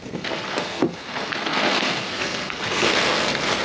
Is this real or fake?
fake